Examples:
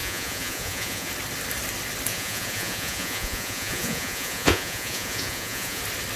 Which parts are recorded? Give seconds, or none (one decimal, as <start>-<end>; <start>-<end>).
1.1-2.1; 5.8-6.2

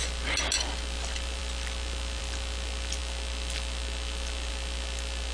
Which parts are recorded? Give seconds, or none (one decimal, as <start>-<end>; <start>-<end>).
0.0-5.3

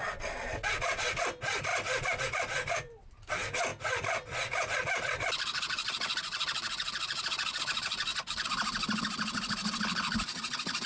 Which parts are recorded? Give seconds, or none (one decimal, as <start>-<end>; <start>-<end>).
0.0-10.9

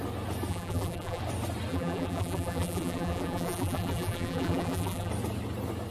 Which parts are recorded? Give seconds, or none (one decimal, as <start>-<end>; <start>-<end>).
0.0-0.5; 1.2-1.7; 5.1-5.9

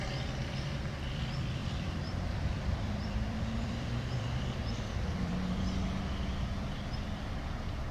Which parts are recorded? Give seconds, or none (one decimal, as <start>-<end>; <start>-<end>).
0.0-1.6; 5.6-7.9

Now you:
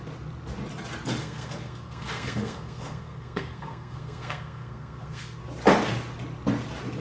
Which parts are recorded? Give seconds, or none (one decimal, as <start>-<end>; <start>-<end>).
0.0-1.2; 5.4-7.0

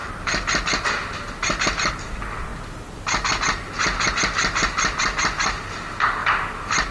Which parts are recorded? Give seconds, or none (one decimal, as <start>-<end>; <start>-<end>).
0.0-6.9

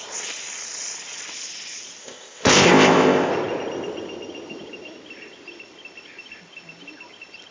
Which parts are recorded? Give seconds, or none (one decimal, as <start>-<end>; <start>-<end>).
0.0-2.0; 3.3-7.5